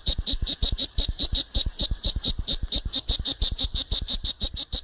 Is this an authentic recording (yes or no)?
no